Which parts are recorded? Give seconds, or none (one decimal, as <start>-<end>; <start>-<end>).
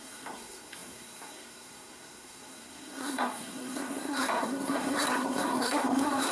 none